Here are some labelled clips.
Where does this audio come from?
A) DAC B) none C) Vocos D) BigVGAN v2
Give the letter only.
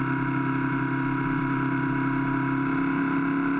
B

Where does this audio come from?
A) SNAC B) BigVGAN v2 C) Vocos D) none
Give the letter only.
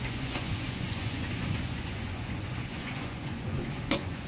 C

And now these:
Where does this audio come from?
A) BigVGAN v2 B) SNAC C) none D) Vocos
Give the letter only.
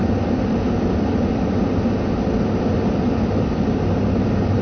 C